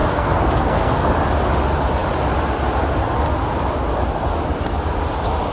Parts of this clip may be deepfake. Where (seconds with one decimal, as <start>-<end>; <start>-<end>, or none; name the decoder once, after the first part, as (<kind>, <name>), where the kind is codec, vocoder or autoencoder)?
0.0-1.1 (codec, SNAC)

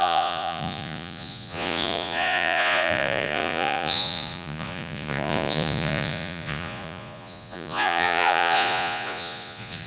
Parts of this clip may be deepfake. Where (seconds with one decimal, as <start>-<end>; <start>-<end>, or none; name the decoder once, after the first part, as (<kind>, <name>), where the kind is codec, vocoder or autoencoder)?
0.0-9.9 (vocoder, Vocos)

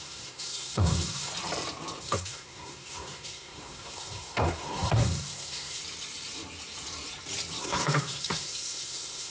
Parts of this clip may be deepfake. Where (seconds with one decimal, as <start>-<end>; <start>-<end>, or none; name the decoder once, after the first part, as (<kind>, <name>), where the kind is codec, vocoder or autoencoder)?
0.0-1.3 (codec, SNAC); 2.0-5.8; 7.6-9.3

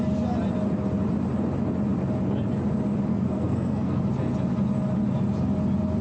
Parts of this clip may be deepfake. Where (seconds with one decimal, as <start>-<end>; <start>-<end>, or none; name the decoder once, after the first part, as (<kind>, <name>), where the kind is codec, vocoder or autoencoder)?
3.1-4.0 (codec, SNAC)

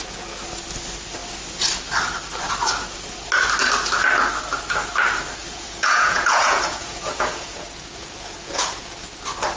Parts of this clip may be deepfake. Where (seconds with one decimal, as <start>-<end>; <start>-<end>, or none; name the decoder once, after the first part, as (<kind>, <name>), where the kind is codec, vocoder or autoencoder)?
5.4-9.1 (vocoder, Vocos)